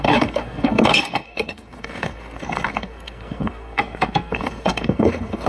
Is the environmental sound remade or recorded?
remade